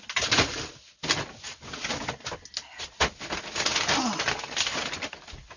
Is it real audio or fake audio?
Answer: real